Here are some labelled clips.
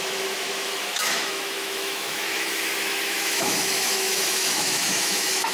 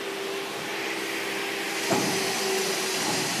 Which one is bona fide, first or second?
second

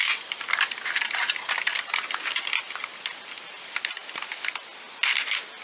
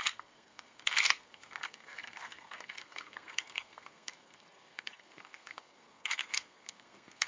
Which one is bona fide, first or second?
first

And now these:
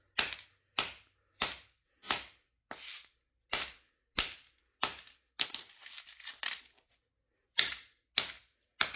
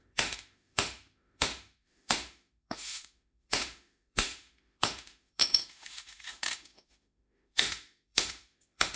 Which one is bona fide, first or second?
first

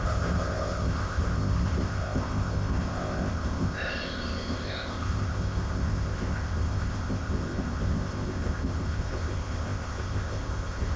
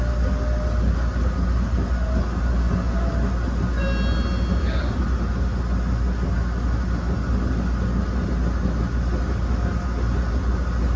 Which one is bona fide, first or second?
second